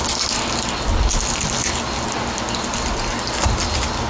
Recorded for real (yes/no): yes